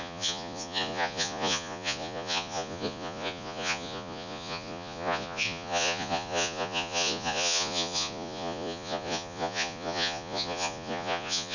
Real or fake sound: fake